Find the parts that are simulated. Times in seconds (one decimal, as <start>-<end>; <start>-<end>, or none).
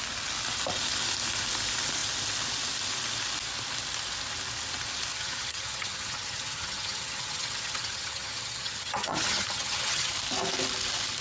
5.1-10.1